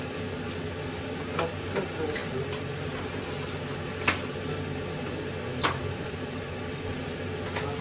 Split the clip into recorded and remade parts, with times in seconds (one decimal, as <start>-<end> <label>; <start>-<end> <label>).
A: 0.0-7.8 recorded